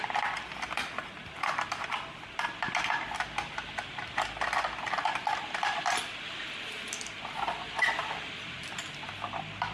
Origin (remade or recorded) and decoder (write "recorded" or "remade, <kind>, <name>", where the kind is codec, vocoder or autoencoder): recorded